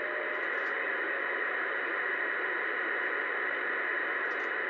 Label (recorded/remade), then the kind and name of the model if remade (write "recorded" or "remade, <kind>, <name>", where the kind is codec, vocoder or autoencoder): recorded